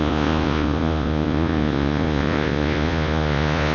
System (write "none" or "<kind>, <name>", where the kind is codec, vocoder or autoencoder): vocoder, Vocos